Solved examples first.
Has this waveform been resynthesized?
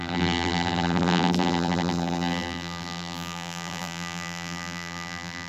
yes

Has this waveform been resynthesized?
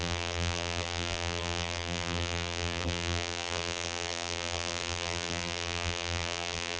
yes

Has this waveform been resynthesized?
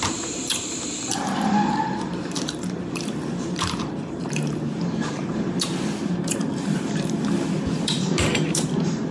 yes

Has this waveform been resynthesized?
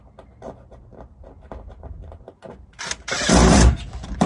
yes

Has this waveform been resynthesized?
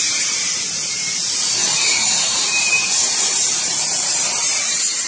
yes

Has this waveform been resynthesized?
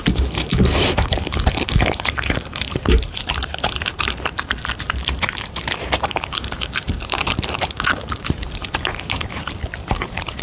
yes